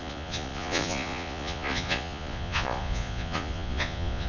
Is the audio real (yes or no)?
no